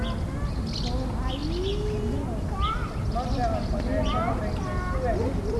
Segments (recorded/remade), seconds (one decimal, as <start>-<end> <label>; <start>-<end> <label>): 0.0-5.6 recorded